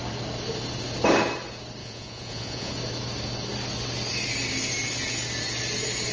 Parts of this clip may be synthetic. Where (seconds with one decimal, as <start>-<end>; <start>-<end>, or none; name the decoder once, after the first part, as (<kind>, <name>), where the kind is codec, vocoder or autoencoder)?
1.8-2.7 (vocoder, Vocos)

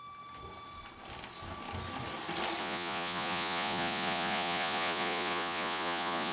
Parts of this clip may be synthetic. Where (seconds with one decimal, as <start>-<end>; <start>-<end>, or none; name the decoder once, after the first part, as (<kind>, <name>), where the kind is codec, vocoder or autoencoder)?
2.6-6.3 (vocoder, Vocos)

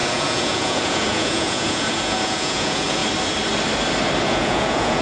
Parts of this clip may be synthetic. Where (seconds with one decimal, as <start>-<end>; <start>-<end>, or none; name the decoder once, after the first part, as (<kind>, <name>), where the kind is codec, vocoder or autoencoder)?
0.0-3.0 (vocoder, Vocos); 4.2-5.0

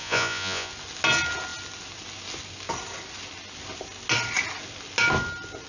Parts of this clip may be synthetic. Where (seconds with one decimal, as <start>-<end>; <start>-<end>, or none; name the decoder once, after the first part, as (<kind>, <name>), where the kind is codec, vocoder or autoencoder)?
0.0-0.7 (vocoder, Vocos)

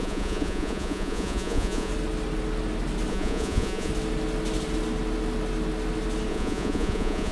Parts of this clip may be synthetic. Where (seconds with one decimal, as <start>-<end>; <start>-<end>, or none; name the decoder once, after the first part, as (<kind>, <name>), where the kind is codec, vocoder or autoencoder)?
0.0-1.9 (vocoder, Vocos); 3.1-3.9; 6.3-7.3

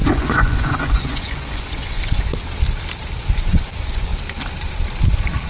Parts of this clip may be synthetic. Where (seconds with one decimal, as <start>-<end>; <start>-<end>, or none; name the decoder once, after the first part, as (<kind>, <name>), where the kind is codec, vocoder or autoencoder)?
0.0-2.3 (vocoder, Vocos); 3.4-4.1

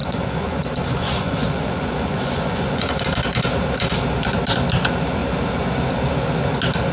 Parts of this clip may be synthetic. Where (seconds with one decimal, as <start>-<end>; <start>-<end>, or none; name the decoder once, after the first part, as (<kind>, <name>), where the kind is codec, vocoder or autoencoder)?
0.0-3.0 (vocoder, Vocos)